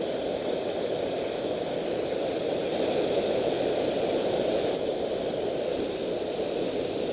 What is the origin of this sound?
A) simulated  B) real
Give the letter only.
B